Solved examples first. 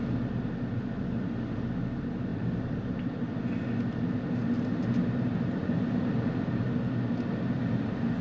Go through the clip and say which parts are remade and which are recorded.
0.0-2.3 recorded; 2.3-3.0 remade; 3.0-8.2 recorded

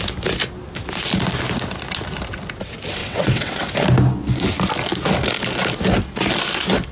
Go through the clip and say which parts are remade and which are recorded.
0.0-3.0 recorded; 3.0-3.7 remade; 3.7-6.9 recorded